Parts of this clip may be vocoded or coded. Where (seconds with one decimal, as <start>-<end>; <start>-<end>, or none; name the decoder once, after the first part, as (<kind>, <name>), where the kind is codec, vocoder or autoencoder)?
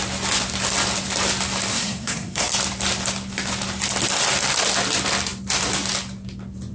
1.7-2.5 (codec, SNAC)